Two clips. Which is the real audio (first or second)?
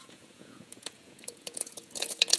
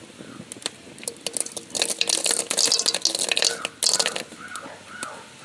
second